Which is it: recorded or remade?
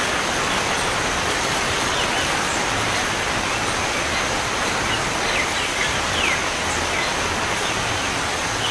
recorded